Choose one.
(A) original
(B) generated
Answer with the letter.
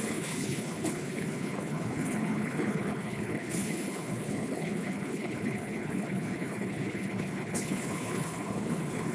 B